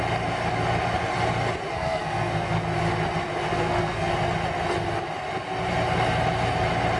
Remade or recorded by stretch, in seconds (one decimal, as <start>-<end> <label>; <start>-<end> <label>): 0.0-1.7 recorded; 1.7-2.6 remade; 2.6-3.5 recorded; 3.5-4.1 remade; 4.1-7.0 recorded